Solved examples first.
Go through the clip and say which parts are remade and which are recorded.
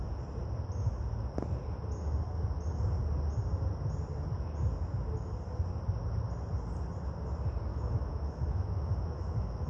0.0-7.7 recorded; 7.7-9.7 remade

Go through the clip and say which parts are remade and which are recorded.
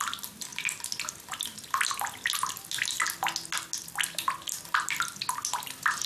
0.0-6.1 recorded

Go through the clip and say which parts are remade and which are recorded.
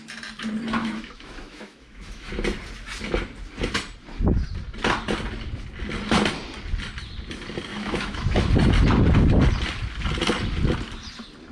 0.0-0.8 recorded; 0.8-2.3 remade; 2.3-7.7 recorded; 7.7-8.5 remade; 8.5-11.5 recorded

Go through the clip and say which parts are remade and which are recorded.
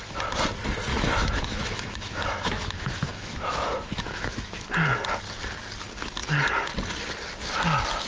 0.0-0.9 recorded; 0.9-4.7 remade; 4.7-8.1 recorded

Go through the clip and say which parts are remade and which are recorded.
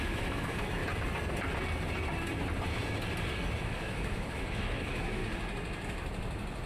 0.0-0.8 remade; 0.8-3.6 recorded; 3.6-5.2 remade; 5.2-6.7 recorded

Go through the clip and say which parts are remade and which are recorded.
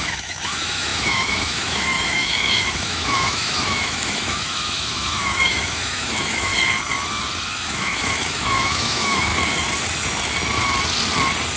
0.0-6.5 remade; 6.5-7.5 recorded; 7.5-9.3 remade; 9.3-11.6 recorded